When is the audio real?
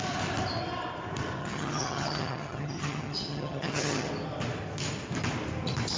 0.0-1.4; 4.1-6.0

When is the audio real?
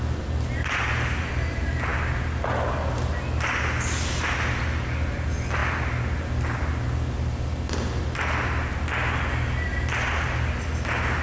0.0-11.2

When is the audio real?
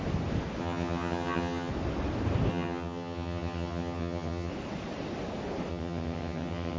0.0-0.6; 1.7-2.5; 4.5-5.7